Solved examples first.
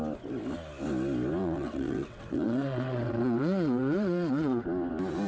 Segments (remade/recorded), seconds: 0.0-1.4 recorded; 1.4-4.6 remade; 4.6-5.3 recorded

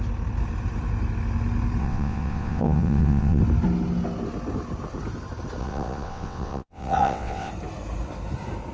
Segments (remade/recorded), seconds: 0.0-1.8 recorded; 1.8-3.4 remade; 3.4-5.6 recorded; 5.6-7.5 remade; 7.5-8.7 recorded

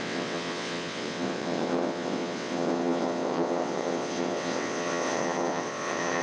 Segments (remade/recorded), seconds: 0.0-6.2 remade

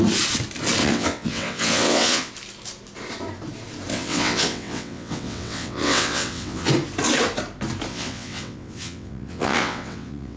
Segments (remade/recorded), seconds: 0.0-0.8 recorded; 0.8-2.3 remade; 2.3-3.9 recorded; 3.9-6.7 remade; 6.7-7.9 recorded; 7.9-10.4 remade